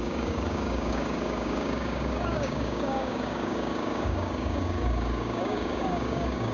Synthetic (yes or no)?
yes